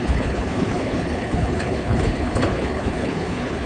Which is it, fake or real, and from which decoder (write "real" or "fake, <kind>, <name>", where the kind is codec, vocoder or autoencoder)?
fake, codec, HILCodec